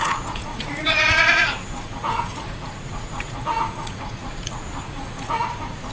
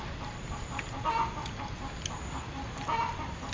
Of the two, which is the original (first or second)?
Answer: second